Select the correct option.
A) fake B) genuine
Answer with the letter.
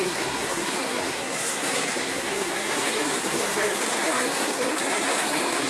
A